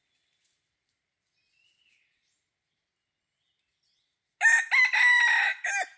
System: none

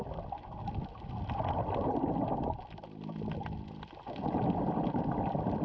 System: none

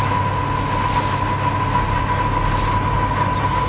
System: none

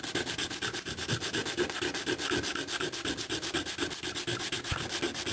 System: none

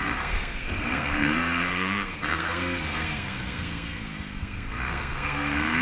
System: codec, SNAC